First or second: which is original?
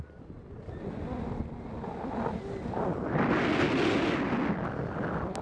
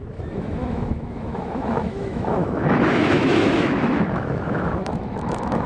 first